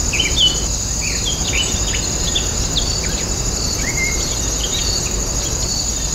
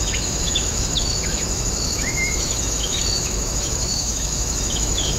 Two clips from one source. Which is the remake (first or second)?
second